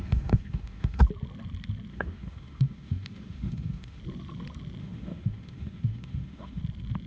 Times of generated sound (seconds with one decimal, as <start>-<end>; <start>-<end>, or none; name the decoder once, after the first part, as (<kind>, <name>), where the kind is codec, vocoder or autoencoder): 0.0-1.0 (autoencoder, DAC-VAE); 1.9-4.0; 4.8-6.6